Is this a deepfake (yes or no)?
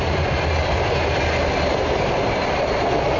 no